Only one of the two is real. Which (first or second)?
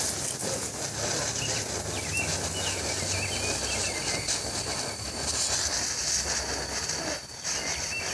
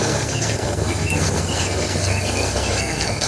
first